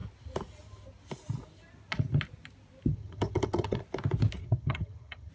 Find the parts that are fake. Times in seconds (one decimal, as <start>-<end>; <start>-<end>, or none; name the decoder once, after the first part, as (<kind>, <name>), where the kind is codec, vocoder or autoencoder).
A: 2.9-3.8 (vocoder, HiFi-GAN); 4.4-5.3